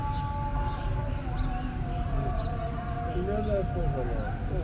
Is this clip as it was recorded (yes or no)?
yes